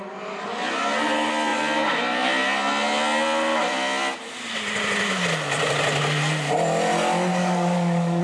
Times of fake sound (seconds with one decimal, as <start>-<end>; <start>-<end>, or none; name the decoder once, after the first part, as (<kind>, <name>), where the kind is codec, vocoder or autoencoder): 7.4-8.2 (codec, DAC)